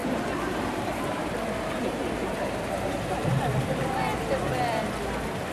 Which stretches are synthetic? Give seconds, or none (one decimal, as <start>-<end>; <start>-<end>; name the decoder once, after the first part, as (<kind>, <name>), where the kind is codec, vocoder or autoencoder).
0.0-3.3 (vocoder, BigVGAN v2)